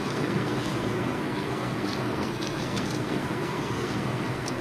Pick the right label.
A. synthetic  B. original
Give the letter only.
A